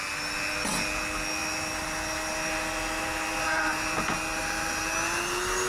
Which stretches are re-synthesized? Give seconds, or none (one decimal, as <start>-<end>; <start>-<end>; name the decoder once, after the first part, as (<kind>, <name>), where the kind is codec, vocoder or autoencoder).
1.4-4.8 (vocoder, BigVGAN v2)